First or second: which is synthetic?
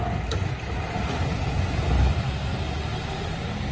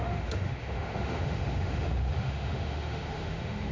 second